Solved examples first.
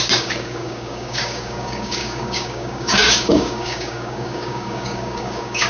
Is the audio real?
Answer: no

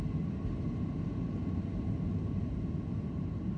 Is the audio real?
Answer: yes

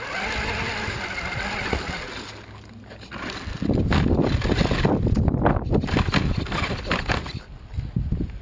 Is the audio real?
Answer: yes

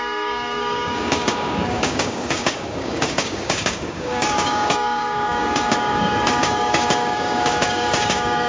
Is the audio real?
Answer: no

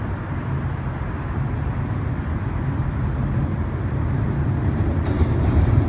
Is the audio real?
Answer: yes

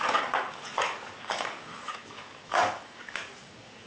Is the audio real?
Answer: no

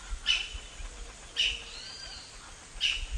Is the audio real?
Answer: yes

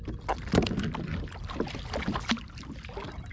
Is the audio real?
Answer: yes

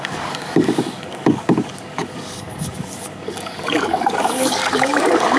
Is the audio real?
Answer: no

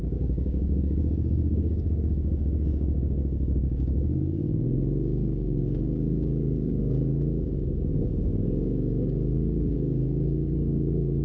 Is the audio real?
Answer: no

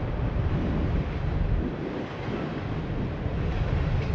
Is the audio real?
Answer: yes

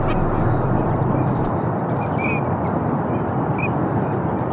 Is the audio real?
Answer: yes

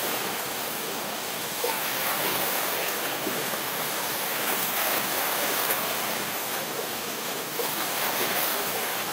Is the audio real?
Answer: no